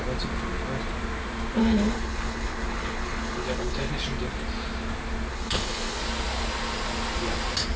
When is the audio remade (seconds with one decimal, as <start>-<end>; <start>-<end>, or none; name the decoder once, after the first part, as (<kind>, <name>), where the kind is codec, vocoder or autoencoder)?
1.6-3.9 (codec, HILCodec); 5.3-6.0